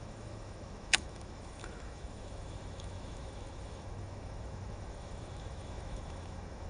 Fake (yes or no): yes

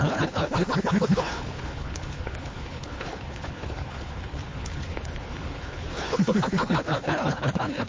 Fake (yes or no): yes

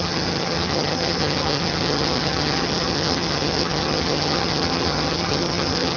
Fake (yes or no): yes